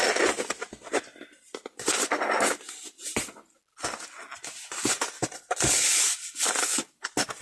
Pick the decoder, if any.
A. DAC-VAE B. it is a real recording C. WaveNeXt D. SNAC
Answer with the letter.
B